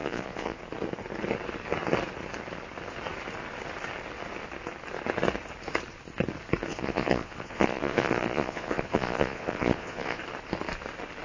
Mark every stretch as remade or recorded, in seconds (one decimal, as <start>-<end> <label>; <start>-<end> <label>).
0.0-0.6 remade; 0.6-6.7 recorded; 6.7-10.2 remade; 10.2-11.2 recorded